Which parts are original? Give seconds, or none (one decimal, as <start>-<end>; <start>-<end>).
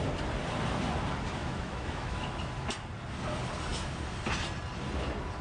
0.0-1.4; 2.4-5.4